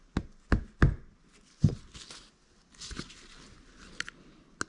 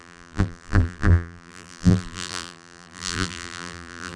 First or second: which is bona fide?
first